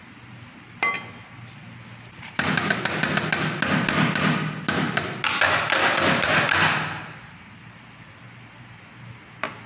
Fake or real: real